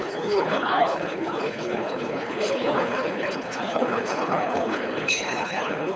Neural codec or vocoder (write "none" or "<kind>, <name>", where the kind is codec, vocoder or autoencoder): codec, HILCodec